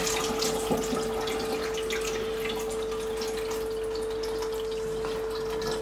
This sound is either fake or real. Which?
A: real